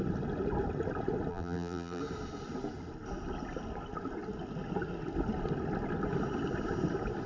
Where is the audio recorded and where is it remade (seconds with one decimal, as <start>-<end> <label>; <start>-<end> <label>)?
0.0-1.3 recorded; 1.3-2.0 remade; 2.0-7.3 recorded